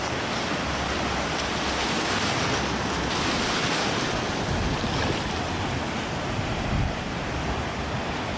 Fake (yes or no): no